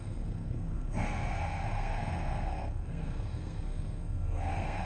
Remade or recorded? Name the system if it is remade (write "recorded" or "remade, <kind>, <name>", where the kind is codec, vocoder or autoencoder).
remade, codec, SNAC